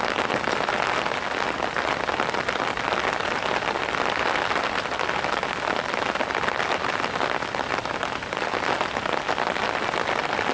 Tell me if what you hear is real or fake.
real